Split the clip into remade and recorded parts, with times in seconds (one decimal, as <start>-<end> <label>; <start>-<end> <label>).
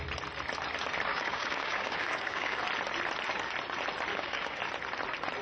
0.0-1.1 recorded; 1.1-2.6 remade; 2.6-4.1 recorded; 4.1-4.6 remade; 4.6-5.4 recorded